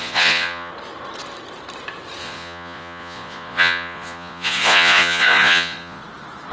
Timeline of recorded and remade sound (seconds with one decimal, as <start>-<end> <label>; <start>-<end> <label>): 0.0-0.7 remade; 0.7-2.2 recorded; 2.2-6.0 remade; 6.0-6.5 recorded